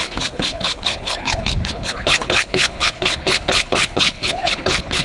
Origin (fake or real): fake